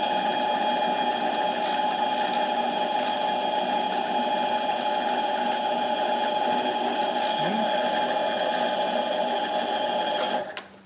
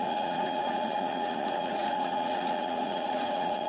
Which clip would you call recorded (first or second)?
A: first